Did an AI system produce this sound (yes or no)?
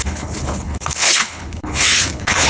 yes